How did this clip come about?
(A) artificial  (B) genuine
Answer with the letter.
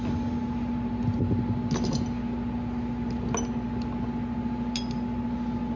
B